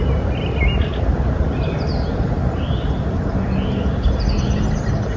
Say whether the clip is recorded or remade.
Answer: recorded